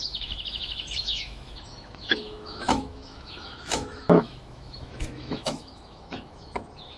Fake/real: fake